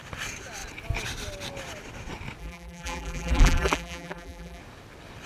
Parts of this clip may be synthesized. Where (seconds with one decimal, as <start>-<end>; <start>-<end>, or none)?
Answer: 2.4-4.6